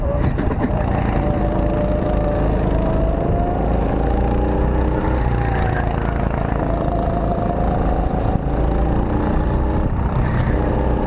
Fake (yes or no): no